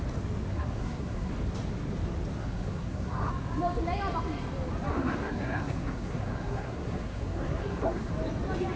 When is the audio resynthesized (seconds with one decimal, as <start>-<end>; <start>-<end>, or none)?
0.5-1.3; 2.4-3.3; 4.9-8.1